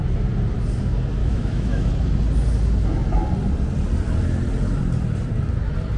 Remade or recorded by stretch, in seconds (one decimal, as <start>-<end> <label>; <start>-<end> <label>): 0.0-1.2 recorded; 1.2-1.9 remade; 1.9-6.0 recorded